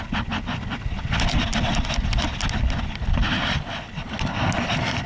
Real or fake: real